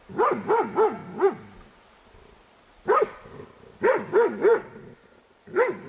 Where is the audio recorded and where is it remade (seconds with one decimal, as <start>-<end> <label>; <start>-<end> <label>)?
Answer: 0.0-5.9 recorded

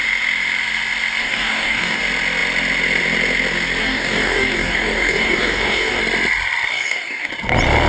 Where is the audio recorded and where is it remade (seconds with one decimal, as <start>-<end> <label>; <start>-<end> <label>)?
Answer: 0.0-1.2 recorded; 1.2-2.0 remade; 2.0-3.8 recorded; 3.8-6.0 remade; 6.0-6.7 recorded; 6.7-7.3 remade; 7.3-7.9 recorded

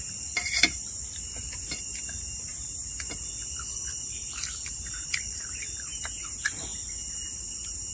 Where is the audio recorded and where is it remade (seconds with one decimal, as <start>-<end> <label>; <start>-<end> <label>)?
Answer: 0.0-7.9 recorded